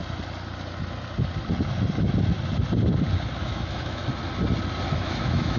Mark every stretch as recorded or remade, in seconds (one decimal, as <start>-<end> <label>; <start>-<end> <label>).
0.0-3.4 recorded; 3.4-4.0 remade; 4.0-4.9 recorded; 4.9-5.6 remade